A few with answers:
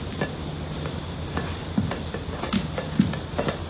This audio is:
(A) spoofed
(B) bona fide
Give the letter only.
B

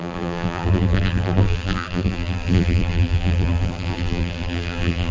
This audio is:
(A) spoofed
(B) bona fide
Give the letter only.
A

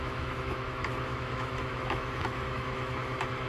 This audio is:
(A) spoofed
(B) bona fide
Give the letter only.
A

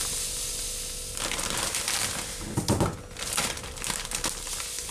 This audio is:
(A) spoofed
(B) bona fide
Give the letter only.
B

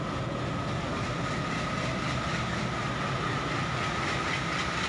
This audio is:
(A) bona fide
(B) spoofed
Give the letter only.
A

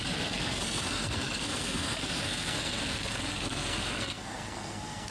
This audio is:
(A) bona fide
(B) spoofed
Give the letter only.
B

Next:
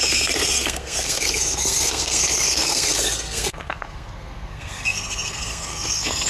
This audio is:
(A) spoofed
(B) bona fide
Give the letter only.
A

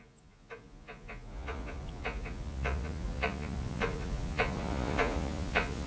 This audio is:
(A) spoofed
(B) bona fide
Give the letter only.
A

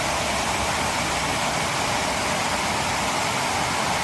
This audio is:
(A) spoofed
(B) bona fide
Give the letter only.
B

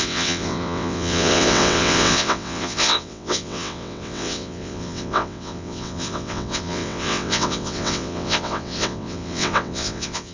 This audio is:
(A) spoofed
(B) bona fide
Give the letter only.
A